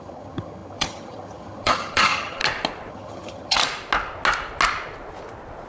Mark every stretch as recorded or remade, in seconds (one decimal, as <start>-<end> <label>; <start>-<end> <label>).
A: 0.0-2.4 remade; 2.4-2.9 recorded; 2.9-3.6 remade; 3.6-5.7 recorded